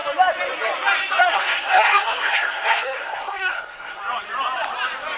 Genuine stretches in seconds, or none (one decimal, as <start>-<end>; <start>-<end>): 0.0-1.2; 4.0-5.2